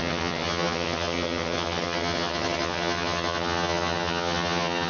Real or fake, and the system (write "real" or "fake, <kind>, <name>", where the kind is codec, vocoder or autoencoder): fake, vocoder, HiFi-GAN